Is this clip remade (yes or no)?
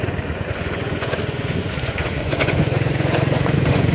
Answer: yes